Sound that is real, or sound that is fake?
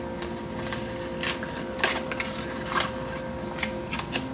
real